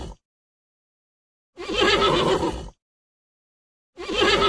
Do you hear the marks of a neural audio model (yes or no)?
no